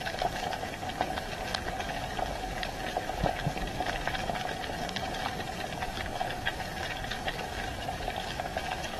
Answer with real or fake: fake